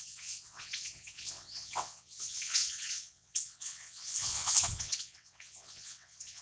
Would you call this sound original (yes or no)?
no